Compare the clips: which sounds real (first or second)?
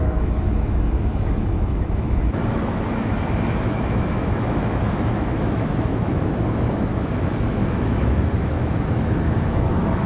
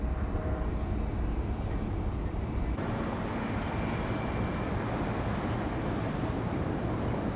second